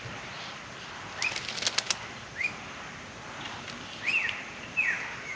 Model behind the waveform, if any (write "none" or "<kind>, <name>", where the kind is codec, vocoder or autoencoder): none